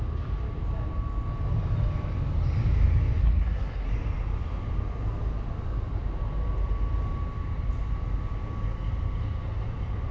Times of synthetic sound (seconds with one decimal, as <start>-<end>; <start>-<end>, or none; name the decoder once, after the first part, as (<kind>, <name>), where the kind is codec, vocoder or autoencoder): 3.2-3.9 (codec, SNAC)